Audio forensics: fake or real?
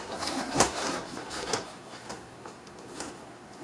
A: fake